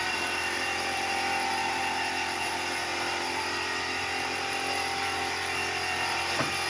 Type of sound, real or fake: fake